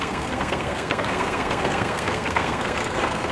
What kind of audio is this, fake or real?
fake